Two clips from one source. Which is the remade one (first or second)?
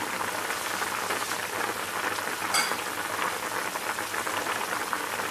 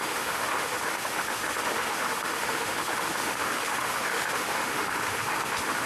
second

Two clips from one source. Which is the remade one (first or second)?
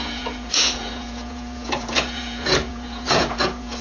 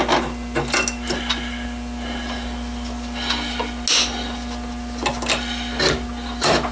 first